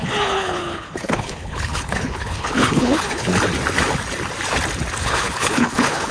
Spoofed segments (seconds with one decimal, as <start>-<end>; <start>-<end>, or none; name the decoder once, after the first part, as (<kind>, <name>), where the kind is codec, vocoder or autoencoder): 0.0-3.3 (codec, HILCodec); 5.0-6.1